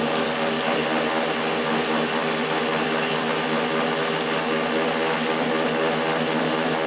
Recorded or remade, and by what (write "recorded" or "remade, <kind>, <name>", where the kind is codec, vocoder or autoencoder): recorded